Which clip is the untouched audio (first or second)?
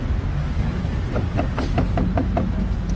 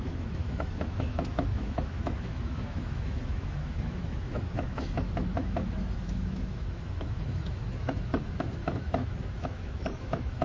first